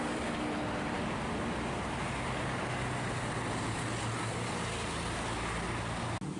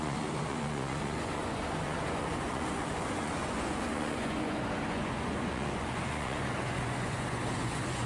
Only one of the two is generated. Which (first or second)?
second